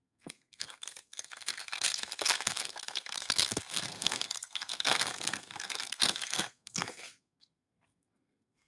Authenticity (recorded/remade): remade